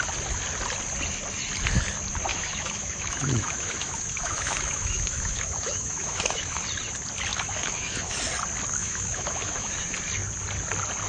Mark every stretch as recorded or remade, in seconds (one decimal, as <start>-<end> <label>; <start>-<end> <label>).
0.0-2.3 recorded; 2.3-6.6 remade; 6.6-7.3 recorded; 7.3-8.2 remade; 8.2-8.8 recorded; 8.8-9.7 remade; 9.7-11.1 recorded